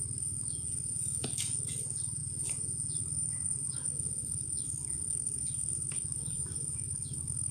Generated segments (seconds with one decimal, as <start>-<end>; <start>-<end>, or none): 0.0-7.5

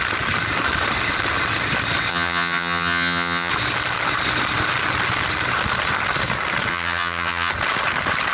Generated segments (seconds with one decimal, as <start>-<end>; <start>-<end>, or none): 2.1-3.5; 6.7-7.5

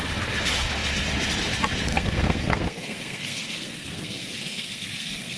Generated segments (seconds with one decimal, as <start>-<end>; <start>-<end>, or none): 1.9-5.4

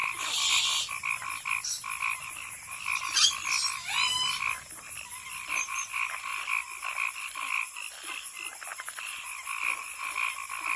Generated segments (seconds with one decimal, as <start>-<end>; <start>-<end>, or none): 0.0-0.5

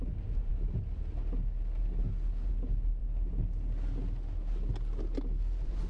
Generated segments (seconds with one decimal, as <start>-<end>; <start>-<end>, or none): none

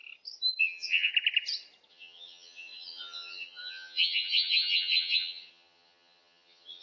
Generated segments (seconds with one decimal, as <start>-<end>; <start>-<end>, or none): 0.6-1.1; 1.9-6.8

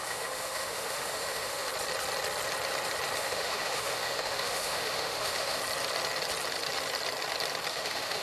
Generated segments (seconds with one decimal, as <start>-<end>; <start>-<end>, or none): 0.0-1.7; 3.2-5.6; 7.7-8.2